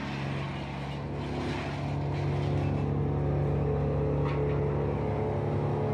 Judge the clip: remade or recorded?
recorded